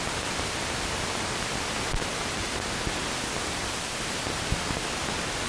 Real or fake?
real